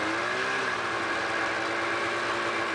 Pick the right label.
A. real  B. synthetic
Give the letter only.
A